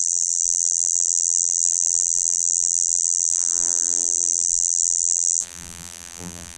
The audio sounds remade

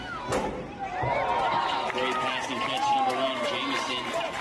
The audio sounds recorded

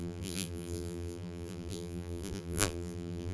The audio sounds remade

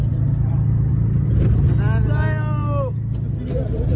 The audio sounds recorded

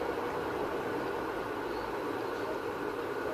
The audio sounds recorded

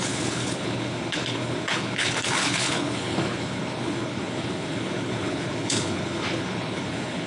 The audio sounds remade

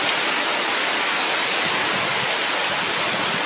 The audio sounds recorded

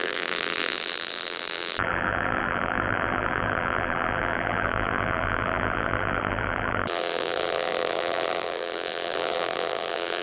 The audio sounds remade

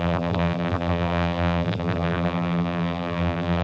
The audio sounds remade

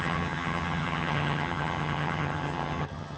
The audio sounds remade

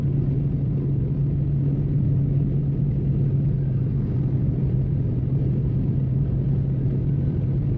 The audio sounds recorded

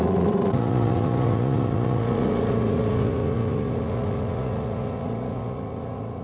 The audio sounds remade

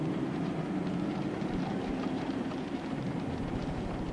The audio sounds remade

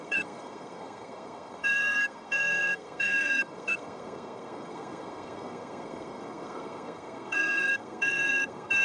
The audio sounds remade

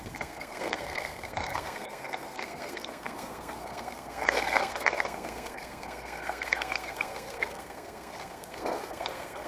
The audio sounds remade